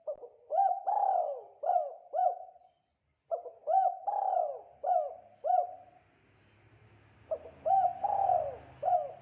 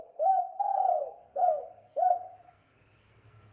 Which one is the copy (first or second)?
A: second